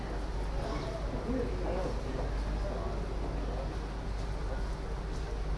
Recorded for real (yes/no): yes